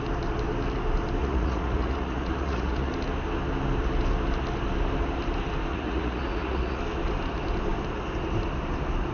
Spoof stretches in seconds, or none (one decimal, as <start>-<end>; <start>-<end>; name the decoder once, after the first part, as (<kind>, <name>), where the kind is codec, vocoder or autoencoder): 1.2-2.9 (vocoder, Vocos); 5.7-6.8